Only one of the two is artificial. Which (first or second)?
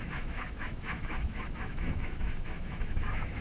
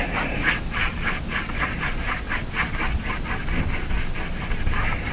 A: first